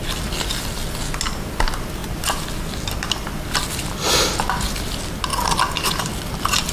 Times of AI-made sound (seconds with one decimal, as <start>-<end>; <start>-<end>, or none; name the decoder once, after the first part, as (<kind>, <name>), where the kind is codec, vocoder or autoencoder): none